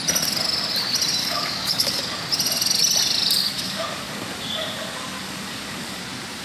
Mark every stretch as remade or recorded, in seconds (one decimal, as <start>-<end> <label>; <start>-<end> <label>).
0.0-1.2 recorded; 1.2-2.0 remade; 2.0-3.4 recorded; 3.4-6.0 remade; 6.0-6.4 recorded